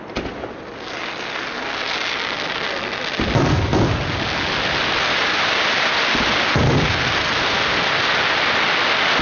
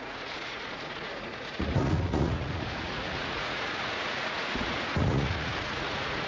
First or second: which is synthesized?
second